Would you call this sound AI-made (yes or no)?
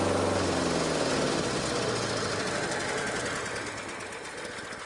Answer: no